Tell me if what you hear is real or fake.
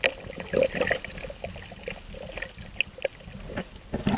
real